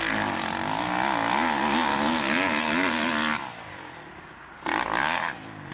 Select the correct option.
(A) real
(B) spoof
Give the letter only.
A